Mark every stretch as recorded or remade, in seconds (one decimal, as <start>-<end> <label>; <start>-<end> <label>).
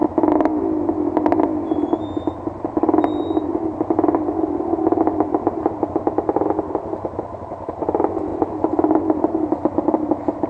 0.0-10.5 recorded